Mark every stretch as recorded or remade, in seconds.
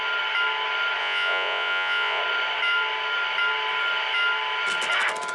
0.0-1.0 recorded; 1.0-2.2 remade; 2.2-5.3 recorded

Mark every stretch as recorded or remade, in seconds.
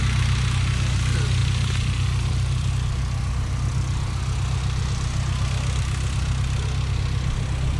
0.0-1.4 recorded; 1.4-2.7 remade; 2.7-7.8 recorded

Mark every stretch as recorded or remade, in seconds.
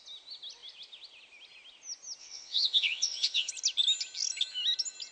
0.0-2.2 recorded; 2.2-3.5 remade; 3.5-5.1 recorded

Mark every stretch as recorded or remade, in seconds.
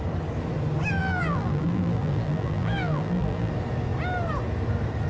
0.0-1.0 recorded; 1.0-3.5 remade; 3.5-5.1 recorded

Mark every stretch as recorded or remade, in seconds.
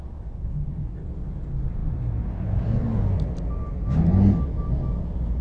0.0-5.4 recorded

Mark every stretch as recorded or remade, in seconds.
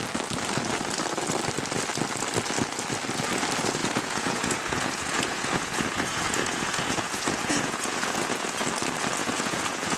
0.0-3.8 recorded; 3.8-8.7 remade; 8.7-9.2 recorded; 9.2-10.0 remade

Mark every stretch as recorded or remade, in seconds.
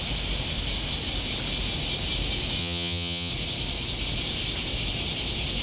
0.0-2.6 recorded; 2.6-3.3 remade; 3.3-5.6 recorded